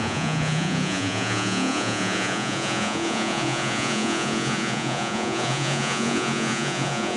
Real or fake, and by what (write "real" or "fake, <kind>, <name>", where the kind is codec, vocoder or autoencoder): fake, vocoder, Vocos